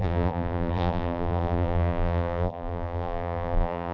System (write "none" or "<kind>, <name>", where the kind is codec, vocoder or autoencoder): vocoder, BigVGAN v2